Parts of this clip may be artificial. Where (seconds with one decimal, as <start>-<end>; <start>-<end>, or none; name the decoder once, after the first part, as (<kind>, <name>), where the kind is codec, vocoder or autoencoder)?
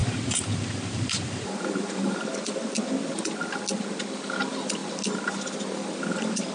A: 0.0-2.2 (vocoder, BigVGAN v2)